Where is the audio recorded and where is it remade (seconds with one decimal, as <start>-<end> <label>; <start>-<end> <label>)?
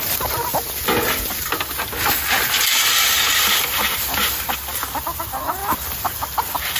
0.0-6.8 recorded